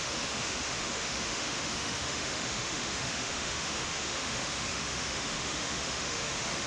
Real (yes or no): no